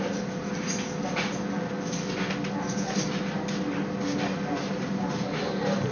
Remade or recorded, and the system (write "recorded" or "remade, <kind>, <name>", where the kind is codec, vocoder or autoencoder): recorded